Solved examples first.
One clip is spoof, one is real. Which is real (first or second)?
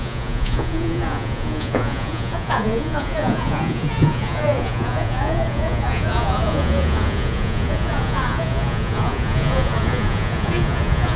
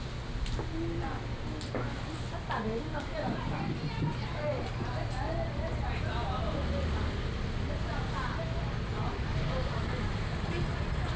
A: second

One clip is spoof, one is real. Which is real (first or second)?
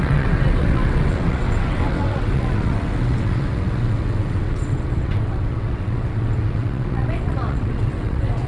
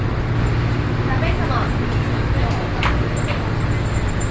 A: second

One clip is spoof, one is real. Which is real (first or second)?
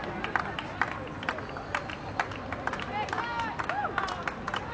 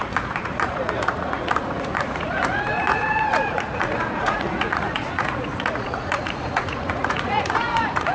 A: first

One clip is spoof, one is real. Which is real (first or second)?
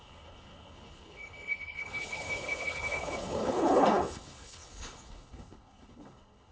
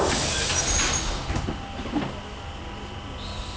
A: second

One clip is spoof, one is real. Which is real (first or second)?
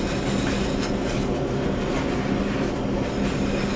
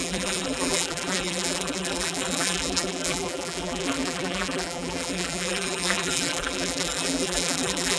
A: first